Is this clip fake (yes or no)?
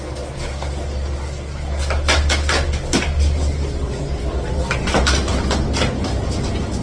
no